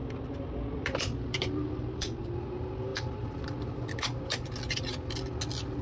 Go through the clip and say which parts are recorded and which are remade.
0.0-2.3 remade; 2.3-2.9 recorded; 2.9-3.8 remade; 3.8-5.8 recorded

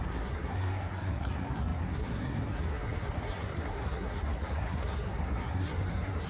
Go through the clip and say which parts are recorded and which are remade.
0.0-6.3 remade

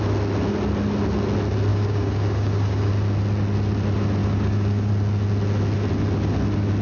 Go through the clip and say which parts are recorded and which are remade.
0.0-1.7 recorded; 1.7-2.9 remade; 2.9-4.2 recorded; 4.2-4.9 remade; 4.9-6.8 recorded

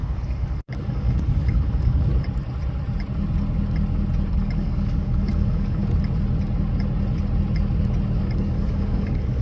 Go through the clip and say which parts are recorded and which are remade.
0.0-2.1 remade; 2.1-4.3 recorded; 4.3-5.8 remade; 5.8-8.2 recorded; 8.2-9.4 remade

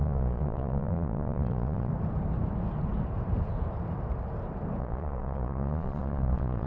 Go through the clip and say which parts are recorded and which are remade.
0.0-1.9 remade; 1.9-4.8 recorded; 4.8-6.7 remade

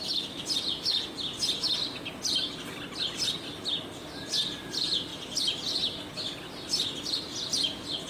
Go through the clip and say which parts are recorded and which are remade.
0.0-8.1 recorded

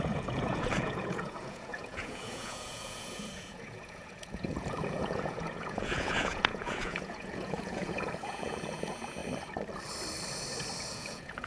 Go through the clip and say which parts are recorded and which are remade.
0.0-9.2 remade; 9.2-10.9 recorded; 10.9-11.5 remade